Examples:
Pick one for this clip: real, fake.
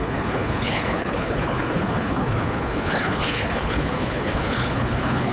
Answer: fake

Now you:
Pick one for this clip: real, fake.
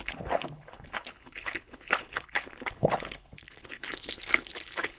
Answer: fake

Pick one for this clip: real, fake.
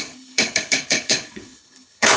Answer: fake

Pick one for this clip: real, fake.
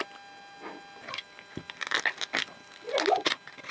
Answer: real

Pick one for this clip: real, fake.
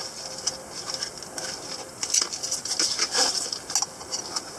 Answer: real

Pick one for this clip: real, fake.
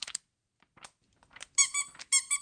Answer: real